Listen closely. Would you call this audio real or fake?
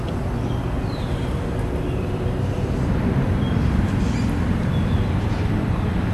fake